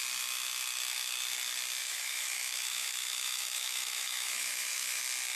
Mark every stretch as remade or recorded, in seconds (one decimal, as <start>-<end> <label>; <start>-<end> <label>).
0.0-1.8 recorded; 1.8-5.0 remade; 5.0-5.4 recorded